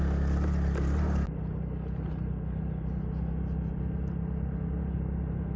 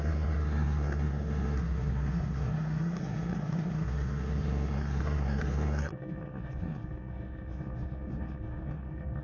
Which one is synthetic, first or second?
second